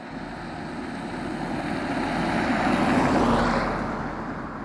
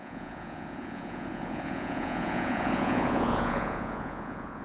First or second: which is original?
first